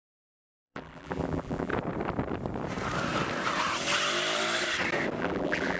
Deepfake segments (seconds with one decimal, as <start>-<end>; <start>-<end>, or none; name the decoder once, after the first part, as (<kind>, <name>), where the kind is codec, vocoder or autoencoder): 0.0-1.7 (vocoder, BigVGAN v2); 5.2-5.8